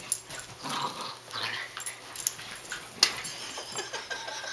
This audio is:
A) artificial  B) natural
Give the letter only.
B